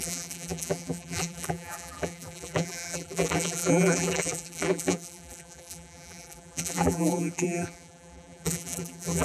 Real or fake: fake